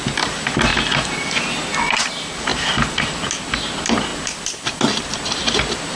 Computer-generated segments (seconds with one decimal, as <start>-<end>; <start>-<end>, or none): 0.7-1.8; 2.5-3.2